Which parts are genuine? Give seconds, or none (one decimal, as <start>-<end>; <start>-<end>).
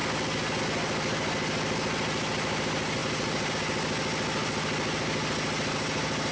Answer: 0.0-3.0; 3.5-6.3